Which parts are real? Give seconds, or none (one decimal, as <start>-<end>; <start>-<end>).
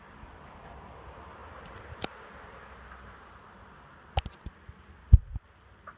0.0-6.0